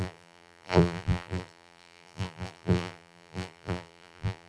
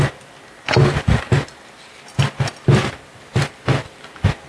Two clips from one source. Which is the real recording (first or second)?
second